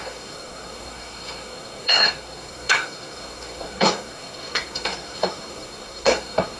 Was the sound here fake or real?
fake